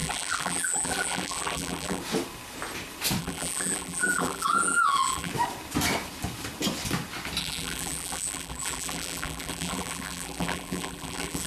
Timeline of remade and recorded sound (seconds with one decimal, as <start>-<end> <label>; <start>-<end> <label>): 0.0-2.0 remade; 2.0-3.2 recorded; 3.2-5.3 remade; 5.3-7.4 recorded; 7.4-11.5 remade